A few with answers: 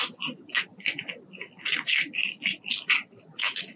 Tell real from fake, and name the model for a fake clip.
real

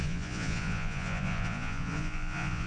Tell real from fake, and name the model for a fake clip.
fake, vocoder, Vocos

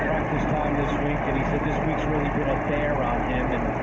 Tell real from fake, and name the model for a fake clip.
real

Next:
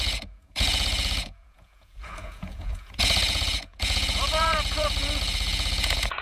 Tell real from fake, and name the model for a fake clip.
fake, vocoder, Vocos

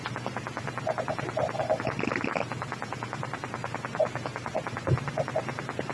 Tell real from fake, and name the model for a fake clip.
real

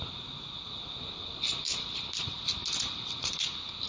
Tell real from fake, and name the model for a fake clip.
real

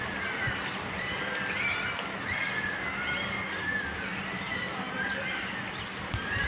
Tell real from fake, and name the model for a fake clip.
real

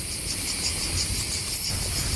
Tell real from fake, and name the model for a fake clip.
real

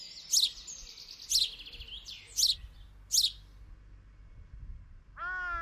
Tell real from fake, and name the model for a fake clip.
real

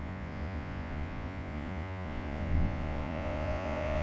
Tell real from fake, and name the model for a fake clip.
fake, vocoder, Vocos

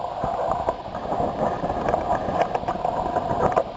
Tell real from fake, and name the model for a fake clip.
real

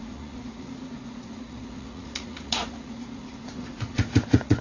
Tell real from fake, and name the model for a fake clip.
fake, vocoder, Vocos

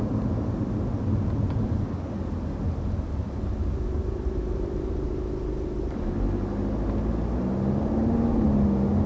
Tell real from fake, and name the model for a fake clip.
real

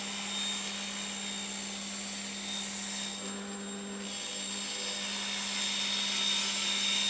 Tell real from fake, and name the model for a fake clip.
real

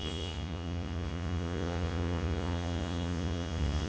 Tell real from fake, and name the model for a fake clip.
fake, vocoder, Vocos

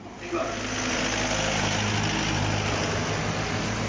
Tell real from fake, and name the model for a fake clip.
real